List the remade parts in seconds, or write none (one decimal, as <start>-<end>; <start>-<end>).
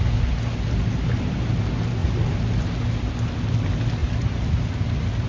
4.0-5.3